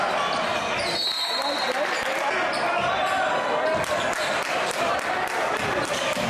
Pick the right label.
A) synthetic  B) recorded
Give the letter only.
B